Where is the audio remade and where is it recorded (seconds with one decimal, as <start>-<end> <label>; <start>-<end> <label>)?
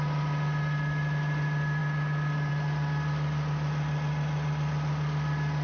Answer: 0.0-5.6 recorded